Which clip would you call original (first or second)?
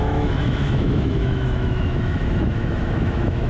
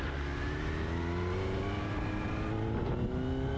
second